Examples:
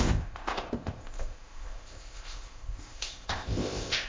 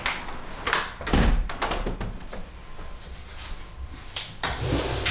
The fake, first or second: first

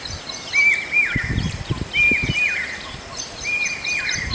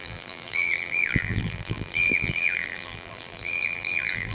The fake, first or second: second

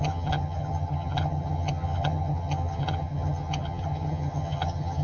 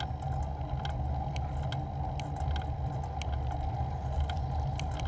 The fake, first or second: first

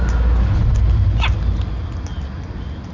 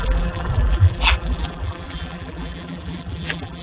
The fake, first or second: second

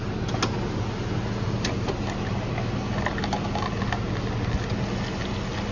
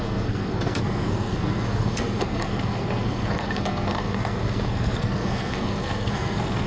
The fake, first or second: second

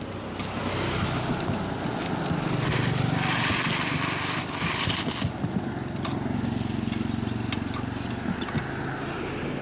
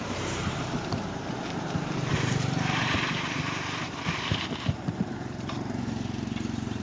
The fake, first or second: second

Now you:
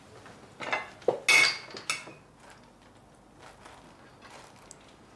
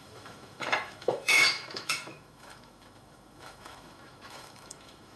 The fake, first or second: second